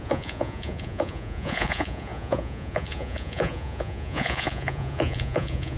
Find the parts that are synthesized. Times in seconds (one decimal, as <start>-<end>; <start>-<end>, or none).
0.0-5.8